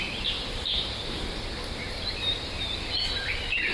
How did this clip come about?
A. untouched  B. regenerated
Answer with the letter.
A